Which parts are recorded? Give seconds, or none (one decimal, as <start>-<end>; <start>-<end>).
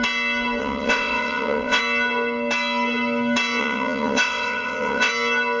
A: 0.0-0.6; 1.8-3.6; 5.1-5.6